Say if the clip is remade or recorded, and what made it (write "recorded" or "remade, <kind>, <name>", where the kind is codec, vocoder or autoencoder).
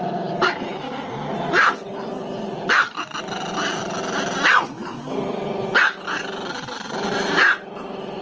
recorded